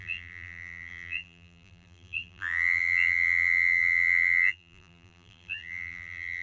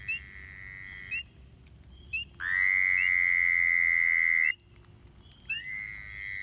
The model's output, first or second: first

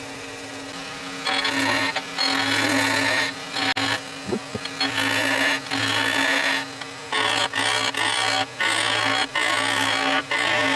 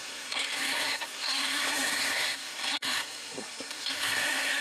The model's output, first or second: second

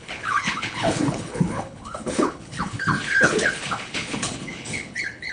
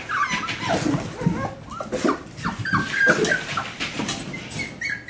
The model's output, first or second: first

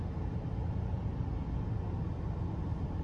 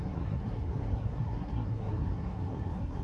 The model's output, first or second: second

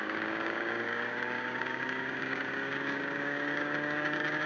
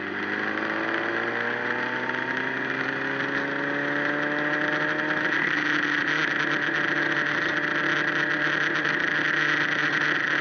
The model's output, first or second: first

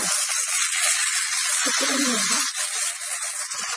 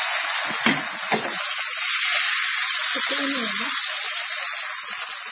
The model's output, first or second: first